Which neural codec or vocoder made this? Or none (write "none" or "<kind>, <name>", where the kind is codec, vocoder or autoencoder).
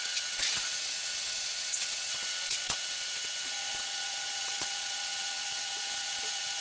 vocoder, WaveNeXt